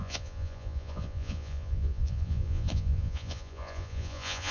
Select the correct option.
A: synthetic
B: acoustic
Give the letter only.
A